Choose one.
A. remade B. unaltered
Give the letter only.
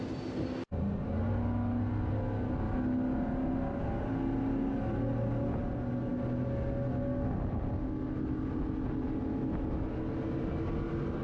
B